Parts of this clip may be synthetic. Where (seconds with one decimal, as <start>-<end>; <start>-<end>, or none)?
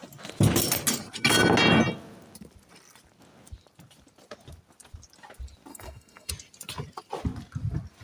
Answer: 5.7-6.3